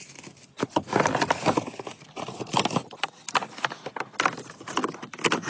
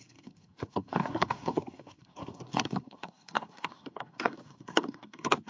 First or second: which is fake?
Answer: second